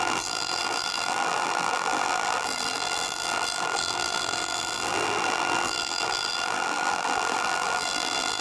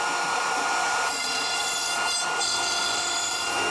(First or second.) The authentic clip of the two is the second